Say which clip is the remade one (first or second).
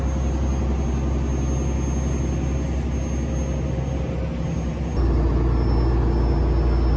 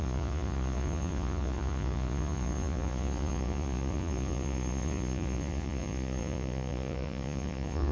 second